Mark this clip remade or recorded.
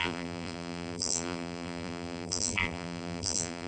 remade